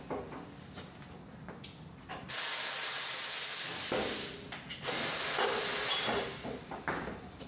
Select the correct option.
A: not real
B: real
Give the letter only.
B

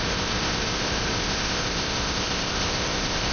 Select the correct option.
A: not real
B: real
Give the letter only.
A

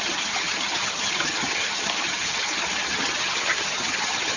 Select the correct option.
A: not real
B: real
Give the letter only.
A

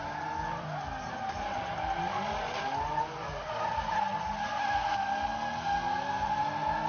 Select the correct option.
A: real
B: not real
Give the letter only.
A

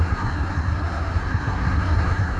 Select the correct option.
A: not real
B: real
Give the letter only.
A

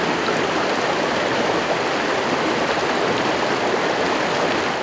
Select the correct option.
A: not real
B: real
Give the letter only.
B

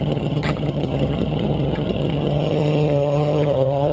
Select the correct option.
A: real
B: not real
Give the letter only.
B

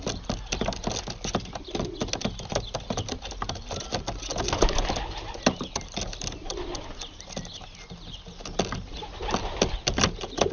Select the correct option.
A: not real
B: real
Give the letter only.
B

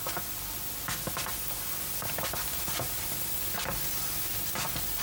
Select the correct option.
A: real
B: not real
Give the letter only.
A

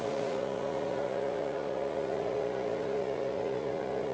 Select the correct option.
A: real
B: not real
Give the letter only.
B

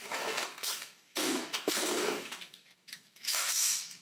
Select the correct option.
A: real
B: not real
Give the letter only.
B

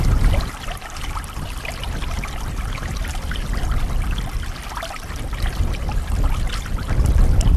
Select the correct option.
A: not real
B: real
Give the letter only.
B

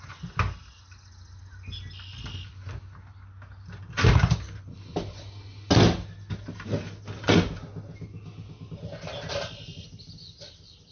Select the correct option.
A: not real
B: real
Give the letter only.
B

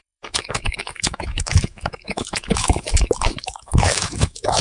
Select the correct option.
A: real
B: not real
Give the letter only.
B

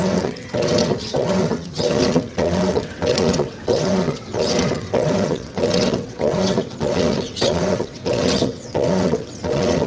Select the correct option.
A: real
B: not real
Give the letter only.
B